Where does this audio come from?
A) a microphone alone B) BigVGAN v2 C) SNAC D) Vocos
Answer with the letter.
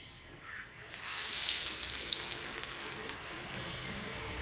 C